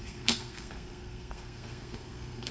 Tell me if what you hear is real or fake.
fake